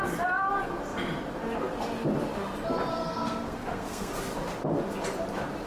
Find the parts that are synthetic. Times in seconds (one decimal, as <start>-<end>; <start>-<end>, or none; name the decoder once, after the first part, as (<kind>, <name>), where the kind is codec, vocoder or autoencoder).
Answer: 2.9-4.1 (codec, SNAC)